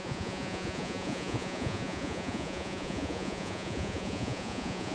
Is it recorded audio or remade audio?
remade